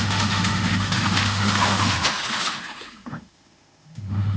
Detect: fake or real fake